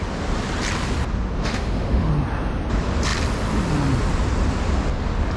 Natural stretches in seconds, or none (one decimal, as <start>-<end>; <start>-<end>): 0.0-1.4; 2.1-5.4